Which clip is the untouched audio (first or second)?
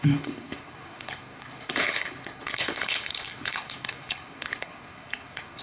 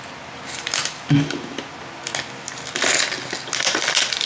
second